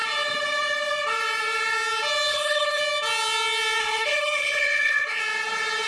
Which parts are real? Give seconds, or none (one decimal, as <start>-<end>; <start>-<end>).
0.0-2.3; 2.8-3.8; 5.2-5.9